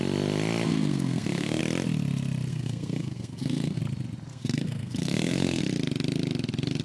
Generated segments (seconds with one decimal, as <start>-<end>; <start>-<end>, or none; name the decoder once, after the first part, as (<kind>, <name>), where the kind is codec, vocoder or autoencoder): 0.7-1.6 (codec, SNAC); 2.5-3.8; 4.3-5.6